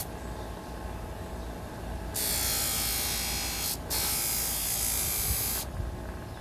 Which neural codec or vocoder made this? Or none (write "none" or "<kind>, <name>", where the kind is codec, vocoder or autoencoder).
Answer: none